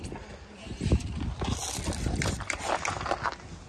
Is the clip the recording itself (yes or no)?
yes